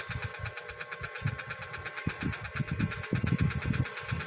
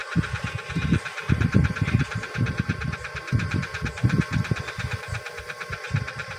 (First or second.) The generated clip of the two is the second